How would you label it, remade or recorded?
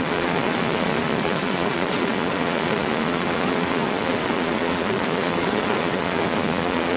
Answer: remade